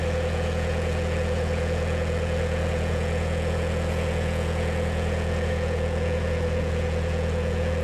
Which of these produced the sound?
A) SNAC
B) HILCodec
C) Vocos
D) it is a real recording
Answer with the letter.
C